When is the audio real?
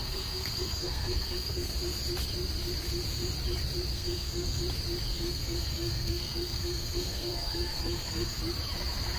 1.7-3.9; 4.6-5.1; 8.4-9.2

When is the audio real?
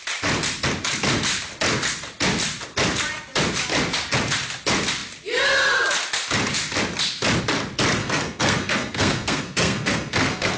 0.0-8.0